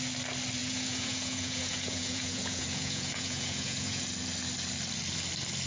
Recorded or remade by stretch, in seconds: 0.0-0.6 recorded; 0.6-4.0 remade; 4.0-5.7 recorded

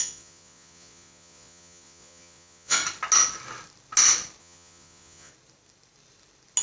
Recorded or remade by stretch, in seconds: 0.0-2.8 remade; 2.8-4.4 recorded; 4.4-5.3 remade; 5.3-6.6 recorded

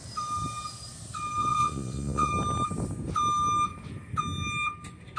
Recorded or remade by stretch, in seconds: 0.0-1.4 recorded; 1.4-2.3 remade; 2.3-5.2 recorded

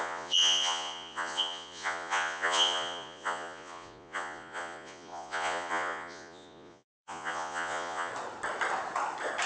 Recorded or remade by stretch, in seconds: 0.0-8.1 remade; 8.1-9.5 recorded

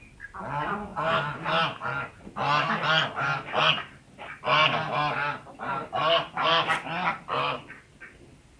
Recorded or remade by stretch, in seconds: 0.0-8.6 recorded

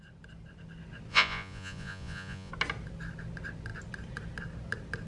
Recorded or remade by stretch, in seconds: 0.0-1.1 recorded; 1.1-2.5 remade; 2.5-5.1 recorded

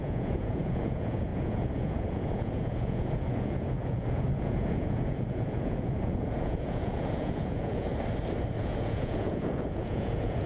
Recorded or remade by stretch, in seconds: 0.0-7.9 remade; 7.9-8.6 recorded; 8.6-10.5 remade